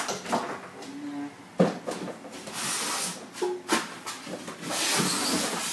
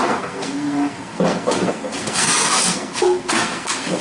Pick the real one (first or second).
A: first